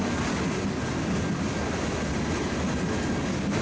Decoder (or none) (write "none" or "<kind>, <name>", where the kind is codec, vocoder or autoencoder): none